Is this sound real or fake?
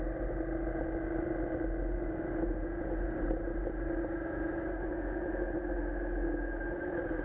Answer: real